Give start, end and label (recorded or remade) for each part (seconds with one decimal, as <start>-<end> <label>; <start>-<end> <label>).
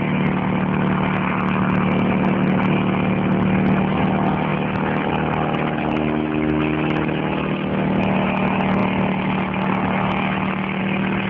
0.0-11.3 recorded